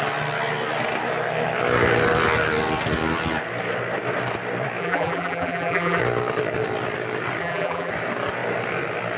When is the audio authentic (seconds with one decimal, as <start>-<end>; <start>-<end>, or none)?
0.0-4.8; 6.0-7.4; 7.9-9.2